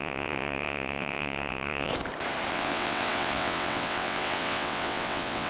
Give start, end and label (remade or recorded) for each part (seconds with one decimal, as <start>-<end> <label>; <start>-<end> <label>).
0.0-1.9 remade; 1.9-2.5 recorded; 2.5-5.5 remade